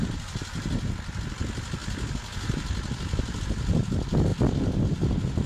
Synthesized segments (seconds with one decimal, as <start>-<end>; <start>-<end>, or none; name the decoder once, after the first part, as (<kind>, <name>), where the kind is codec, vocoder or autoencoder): none